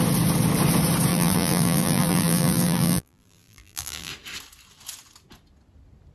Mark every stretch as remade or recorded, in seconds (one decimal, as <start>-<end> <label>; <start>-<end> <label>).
0.0-1.1 recorded; 1.1-4.1 remade; 4.1-6.1 recorded